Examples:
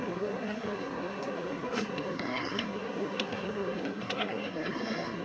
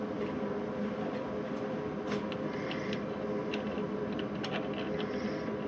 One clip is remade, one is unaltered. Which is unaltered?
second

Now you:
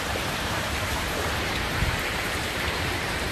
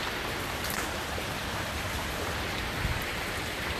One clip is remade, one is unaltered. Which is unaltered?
second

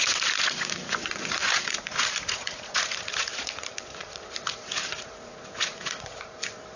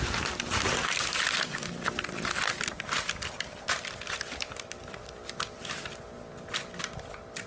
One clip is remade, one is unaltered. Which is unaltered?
second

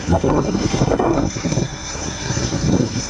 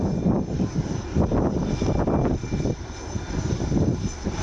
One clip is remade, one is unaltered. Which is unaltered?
second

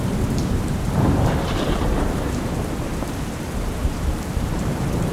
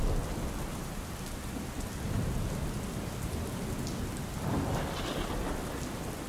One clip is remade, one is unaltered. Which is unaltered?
second